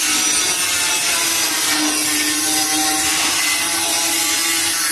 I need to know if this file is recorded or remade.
recorded